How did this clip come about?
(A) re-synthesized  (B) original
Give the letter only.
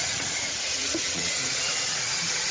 A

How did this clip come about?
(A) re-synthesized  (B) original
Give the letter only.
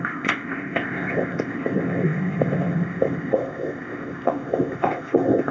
A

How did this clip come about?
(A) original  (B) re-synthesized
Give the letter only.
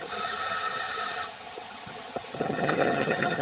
B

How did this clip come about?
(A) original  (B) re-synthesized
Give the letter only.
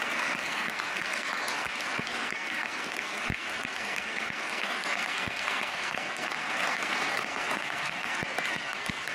B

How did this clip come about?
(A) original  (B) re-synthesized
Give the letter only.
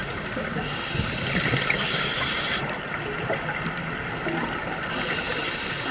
A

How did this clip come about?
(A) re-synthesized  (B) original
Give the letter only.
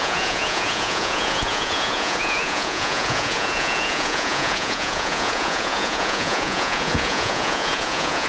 A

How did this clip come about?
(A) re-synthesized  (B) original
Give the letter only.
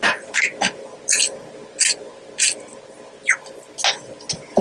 B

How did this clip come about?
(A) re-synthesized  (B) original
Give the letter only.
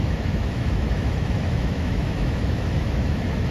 A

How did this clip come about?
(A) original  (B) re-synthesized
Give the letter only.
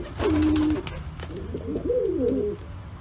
A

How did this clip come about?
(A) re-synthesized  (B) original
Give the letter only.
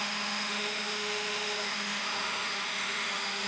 A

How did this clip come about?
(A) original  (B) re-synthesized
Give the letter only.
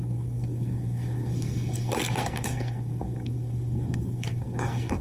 B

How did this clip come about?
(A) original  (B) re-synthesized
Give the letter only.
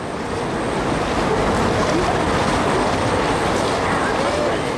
A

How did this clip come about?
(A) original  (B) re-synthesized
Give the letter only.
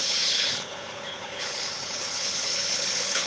B